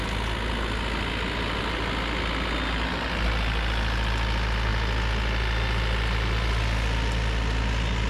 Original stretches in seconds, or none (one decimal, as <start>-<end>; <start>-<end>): 0.0-8.1